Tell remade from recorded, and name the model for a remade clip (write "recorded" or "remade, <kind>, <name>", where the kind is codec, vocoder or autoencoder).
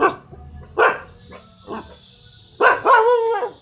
recorded